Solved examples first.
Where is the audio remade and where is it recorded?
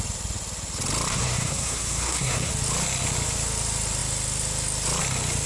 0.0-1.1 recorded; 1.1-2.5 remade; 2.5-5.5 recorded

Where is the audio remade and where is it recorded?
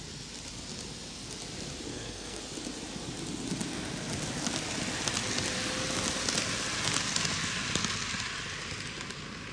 0.0-1.9 recorded; 1.9-2.4 remade; 2.4-9.5 recorded